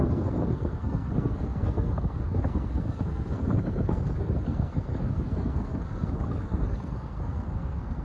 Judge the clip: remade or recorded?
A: remade